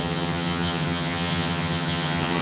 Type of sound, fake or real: fake